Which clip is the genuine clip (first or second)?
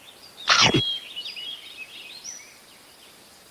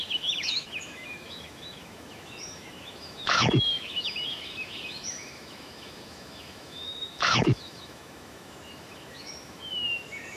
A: first